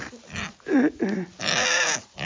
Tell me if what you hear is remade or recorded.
recorded